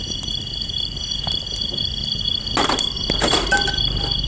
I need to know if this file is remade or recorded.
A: recorded